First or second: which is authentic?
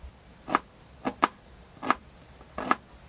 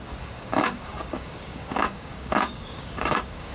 first